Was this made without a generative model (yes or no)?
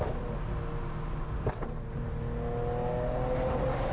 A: yes